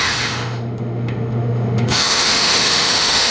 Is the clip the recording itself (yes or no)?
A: no